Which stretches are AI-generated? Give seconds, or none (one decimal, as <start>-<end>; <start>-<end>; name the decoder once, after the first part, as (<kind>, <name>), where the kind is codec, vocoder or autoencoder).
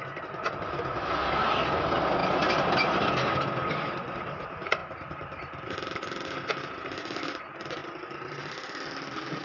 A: none